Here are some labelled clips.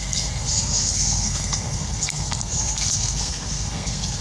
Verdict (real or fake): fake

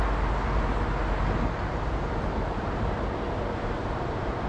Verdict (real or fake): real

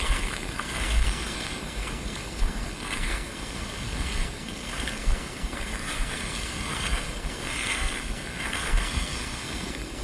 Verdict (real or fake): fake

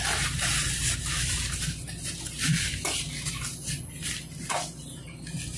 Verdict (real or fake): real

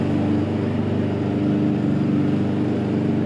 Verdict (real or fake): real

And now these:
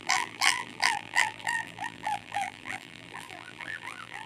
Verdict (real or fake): fake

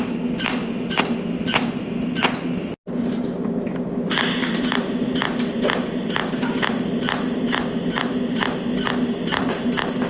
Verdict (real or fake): real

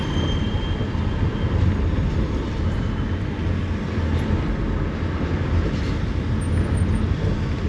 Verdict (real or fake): real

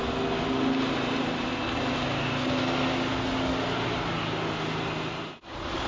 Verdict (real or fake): real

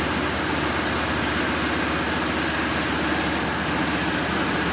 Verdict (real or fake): real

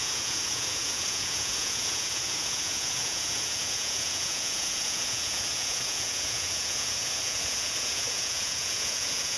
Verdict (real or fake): fake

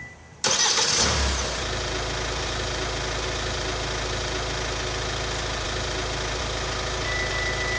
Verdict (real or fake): real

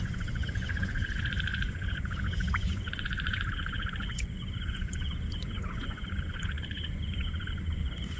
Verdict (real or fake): fake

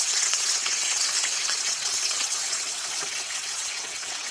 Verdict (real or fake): fake